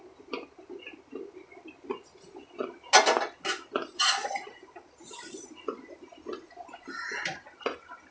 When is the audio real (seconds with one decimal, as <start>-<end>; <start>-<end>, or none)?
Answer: 0.0-4.2; 5.3-8.1